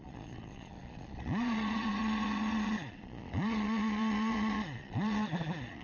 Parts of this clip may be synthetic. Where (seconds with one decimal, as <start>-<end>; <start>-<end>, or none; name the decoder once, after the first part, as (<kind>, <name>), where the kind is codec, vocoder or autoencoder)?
0.0-5.8 (vocoder, Vocos)